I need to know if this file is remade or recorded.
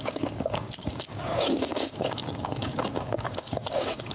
remade